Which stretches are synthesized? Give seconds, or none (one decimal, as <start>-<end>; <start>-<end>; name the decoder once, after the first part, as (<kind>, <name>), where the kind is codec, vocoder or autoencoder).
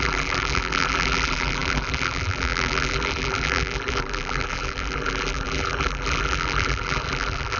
0.0-7.6 (vocoder, BigVGAN v2)